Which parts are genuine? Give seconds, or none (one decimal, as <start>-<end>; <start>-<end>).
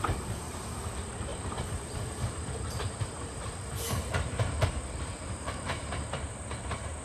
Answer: none